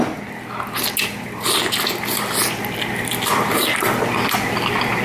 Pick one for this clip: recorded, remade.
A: recorded